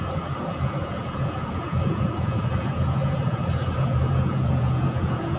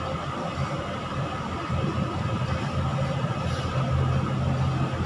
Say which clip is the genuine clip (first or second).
second